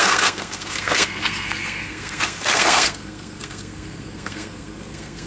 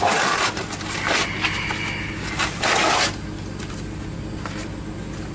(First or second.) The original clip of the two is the second